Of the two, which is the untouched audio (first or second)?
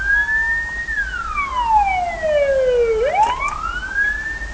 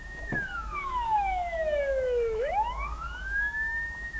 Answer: first